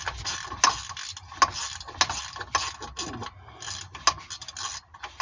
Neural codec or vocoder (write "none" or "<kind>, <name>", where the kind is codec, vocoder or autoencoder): none